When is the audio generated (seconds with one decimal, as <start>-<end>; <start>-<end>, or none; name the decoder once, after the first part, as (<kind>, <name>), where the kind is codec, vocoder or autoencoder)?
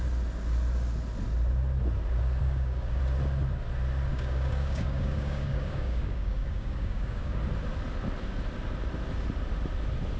2.4-3.0 (codec, DAC); 4.1-7.4